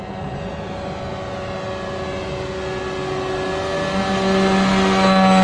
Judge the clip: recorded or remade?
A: recorded